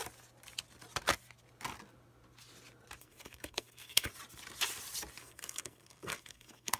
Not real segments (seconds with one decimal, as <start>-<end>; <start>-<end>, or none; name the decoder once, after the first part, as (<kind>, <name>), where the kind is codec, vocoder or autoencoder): 3.0-4.1 (codec, SNAC); 5.2-6.8